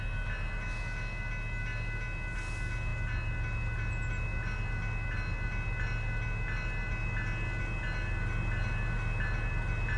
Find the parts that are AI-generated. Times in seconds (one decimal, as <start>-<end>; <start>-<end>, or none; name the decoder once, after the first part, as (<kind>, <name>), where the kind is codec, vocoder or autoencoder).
none